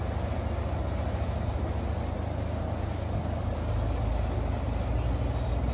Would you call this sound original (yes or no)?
yes